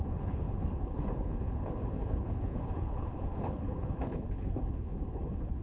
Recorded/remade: remade